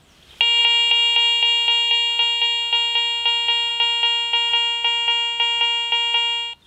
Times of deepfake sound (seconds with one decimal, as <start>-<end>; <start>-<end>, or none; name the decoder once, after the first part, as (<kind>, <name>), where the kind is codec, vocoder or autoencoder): none

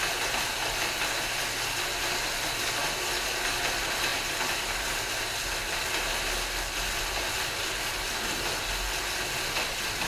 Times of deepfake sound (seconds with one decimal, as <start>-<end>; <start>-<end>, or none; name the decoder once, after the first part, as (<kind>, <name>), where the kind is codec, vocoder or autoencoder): 4.1-5.1 (vocoder, BigVGAN v2)

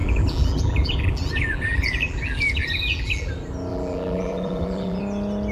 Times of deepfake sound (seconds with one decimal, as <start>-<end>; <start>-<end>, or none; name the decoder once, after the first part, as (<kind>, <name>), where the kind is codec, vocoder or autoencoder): 0.0-3.3 (vocoder, BigVGAN v2); 3.7-5.0